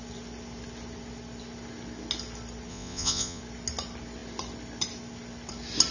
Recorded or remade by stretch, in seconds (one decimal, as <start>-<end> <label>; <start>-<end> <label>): 0.0-2.7 recorded; 2.7-3.4 remade; 3.4-5.9 recorded